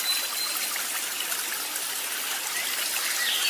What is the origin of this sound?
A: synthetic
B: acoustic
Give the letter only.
B